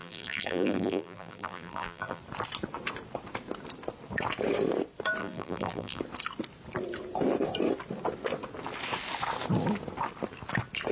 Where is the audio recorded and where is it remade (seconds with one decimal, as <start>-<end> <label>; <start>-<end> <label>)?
0.0-2.2 remade; 2.2-5.2 recorded; 5.2-6.0 remade; 6.0-10.9 recorded